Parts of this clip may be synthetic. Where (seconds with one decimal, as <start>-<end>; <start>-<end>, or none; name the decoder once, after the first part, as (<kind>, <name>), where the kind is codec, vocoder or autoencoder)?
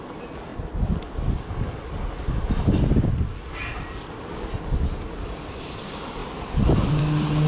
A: none